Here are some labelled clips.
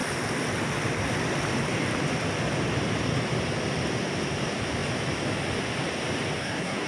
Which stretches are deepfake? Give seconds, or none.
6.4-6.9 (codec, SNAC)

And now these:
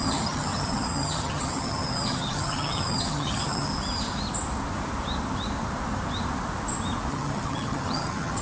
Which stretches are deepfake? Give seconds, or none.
0.0-3.7 (vocoder, HiFi-GAN); 7.1-8.4

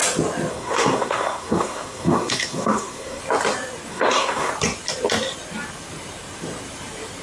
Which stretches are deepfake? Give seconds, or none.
0.5-3.2 (codec, SNAC); 3.9-4.5